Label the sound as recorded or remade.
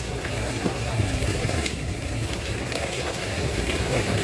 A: remade